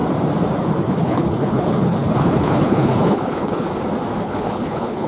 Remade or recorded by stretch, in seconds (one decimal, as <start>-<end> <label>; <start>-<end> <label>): 0.0-0.7 recorded; 0.7-3.7 remade; 3.7-4.2 recorded; 4.2-5.1 remade